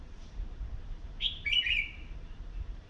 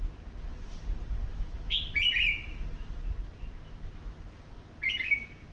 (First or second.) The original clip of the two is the second